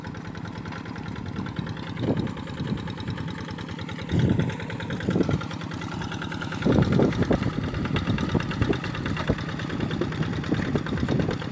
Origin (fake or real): real